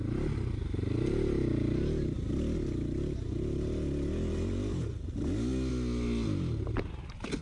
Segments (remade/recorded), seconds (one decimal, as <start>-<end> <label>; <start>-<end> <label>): 0.0-7.4 recorded